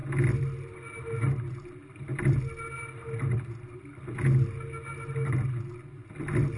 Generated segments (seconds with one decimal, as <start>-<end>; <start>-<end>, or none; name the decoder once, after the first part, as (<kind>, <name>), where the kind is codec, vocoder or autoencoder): none